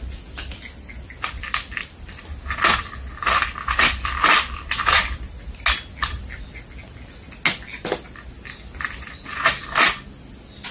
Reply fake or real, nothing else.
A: real